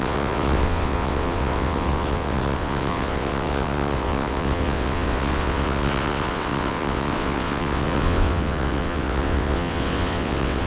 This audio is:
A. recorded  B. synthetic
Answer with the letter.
B